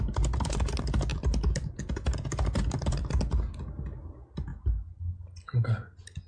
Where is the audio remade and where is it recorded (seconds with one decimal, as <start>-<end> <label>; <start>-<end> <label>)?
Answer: 0.0-1.1 recorded; 1.1-3.2 remade; 3.2-6.3 recorded